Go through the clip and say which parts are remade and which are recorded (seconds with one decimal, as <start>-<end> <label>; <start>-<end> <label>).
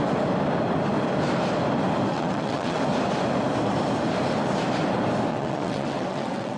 0.0-2.1 recorded; 2.1-2.8 remade; 2.8-5.3 recorded; 5.3-6.6 remade